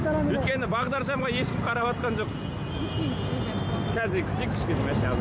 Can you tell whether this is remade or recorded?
recorded